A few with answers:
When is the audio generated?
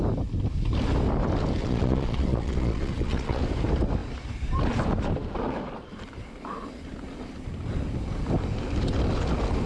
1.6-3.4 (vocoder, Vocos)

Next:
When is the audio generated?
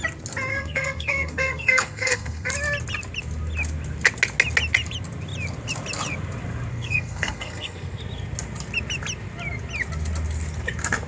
0.5-2.5 (codec, SNAC); 6.7-8.0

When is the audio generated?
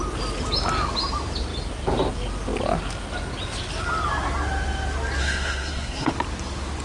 5.2-6.1 (codec, SNAC)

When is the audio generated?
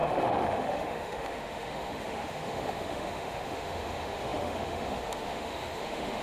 0.0-6.2 (autoencoder, DAC-VAE)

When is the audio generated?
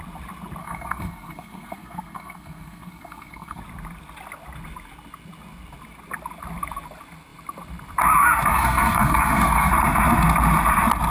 0.6-3.6 (codec, SNAC); 8.5-9.7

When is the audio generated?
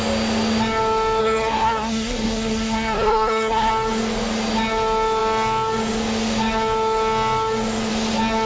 1.2-3.7 (codec, SNAC)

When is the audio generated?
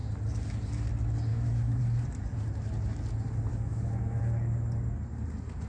1.3-1.8 (autoencoder, DAC-VAE); 3.5-4.2